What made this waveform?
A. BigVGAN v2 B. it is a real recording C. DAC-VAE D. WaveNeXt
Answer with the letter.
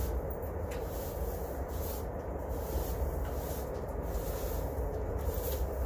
B